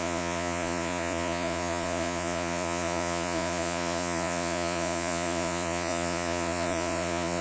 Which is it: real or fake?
fake